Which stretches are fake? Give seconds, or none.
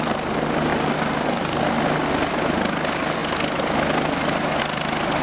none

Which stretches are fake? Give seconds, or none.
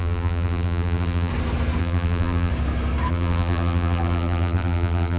0.0-1.3 (vocoder, BigVGAN v2); 1.8-2.5; 3.1-5.2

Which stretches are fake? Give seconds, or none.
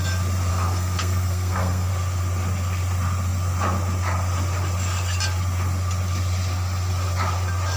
0.5-1.9 (codec, SNAC)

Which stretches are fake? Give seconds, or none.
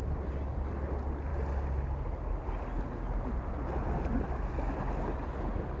none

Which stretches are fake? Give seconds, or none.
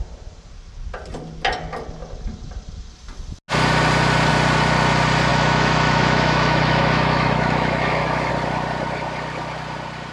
5.3-8.3 (autoencoder, DAC-VAE)